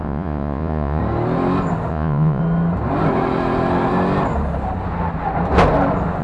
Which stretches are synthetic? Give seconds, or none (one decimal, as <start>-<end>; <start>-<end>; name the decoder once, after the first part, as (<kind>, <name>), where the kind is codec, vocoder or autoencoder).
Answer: 0.0-1.0 (vocoder, Vocos); 1.9-2.4